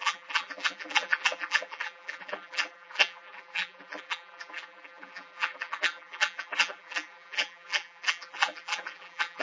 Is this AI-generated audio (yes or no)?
yes